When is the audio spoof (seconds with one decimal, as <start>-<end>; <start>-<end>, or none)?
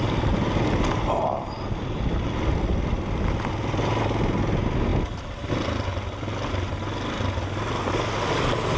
none